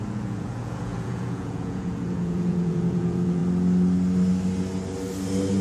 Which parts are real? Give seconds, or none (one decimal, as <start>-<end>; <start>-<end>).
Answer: 3.4-5.6